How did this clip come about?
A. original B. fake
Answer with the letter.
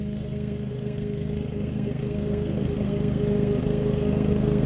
B